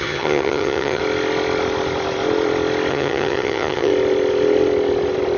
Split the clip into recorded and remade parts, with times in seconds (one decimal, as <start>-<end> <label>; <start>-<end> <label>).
0.0-1.0 remade; 1.0-2.9 recorded; 2.9-3.9 remade; 3.9-5.4 recorded